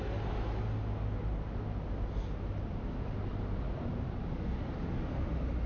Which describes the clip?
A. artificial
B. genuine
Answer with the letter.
B